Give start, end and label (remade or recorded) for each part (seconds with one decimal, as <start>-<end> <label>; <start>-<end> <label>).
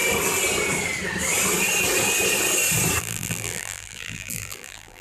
0.0-3.0 recorded; 3.0-5.0 remade